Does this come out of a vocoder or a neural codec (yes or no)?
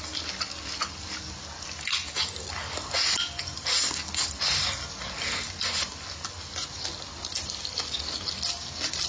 no